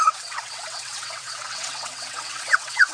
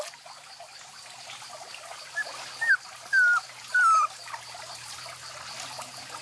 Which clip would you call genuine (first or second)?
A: second